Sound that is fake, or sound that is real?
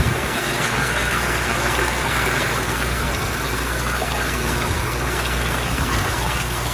fake